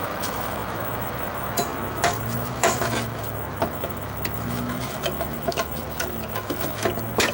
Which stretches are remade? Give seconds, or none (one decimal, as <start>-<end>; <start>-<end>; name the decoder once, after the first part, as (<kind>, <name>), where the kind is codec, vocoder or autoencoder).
0.0-7.3 (autoencoder, DAC-VAE)

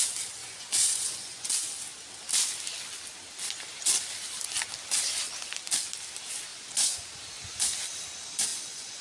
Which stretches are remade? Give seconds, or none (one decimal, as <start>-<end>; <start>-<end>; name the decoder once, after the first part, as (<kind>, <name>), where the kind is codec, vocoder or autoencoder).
0.4-1.5 (vocoder, Vocos); 6.5-7.1; 8.5-9.0